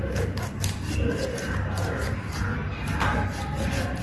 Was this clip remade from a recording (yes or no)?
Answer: no